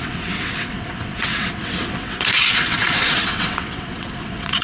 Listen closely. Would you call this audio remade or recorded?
remade